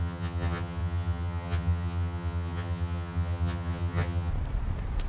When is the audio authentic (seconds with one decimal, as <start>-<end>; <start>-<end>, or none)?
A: 4.3-5.1